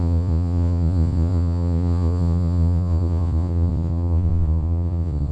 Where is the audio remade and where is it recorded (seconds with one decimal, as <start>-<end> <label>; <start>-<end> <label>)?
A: 0.0-5.3 remade